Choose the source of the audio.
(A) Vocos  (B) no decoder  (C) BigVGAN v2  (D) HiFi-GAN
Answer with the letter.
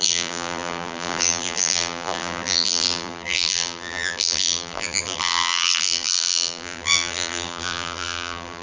C